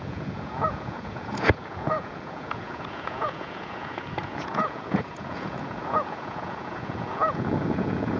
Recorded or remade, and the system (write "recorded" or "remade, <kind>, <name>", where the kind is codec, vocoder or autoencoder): remade, vocoder, Vocos